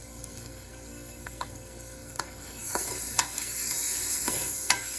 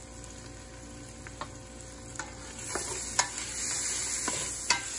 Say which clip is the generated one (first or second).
first